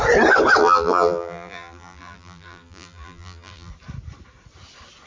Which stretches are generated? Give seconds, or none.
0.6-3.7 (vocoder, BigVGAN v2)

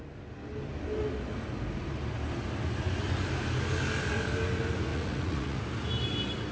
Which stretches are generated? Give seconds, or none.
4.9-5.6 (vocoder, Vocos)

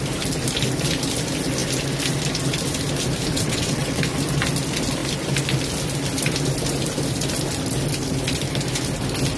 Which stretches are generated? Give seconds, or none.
3.3-4.0 (vocoder, WaveNeXt)